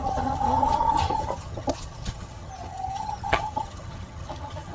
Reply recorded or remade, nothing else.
remade